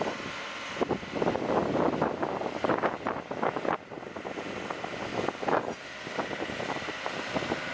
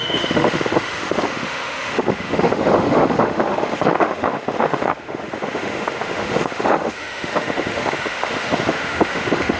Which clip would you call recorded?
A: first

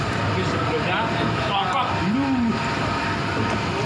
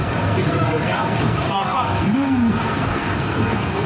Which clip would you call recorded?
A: first